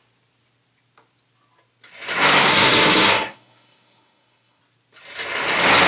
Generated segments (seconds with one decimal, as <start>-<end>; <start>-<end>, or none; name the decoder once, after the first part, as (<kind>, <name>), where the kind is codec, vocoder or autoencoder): 2.5-4.6 (codec, SNAC)